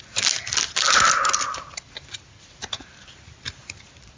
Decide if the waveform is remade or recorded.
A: recorded